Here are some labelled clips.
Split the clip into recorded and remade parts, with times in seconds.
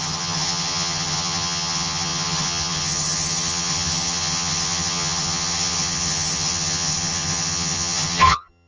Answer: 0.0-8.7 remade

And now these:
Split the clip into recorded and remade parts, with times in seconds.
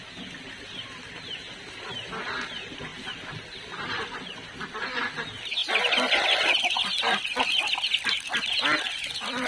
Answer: 0.0-9.5 recorded